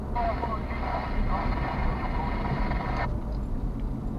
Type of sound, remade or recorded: recorded